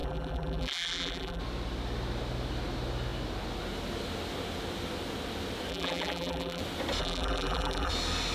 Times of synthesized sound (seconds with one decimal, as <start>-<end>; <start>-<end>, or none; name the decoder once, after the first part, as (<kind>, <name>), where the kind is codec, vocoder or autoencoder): 0.0-1.4 (vocoder, BigVGAN v2); 5.7-6.6; 7.0-7.9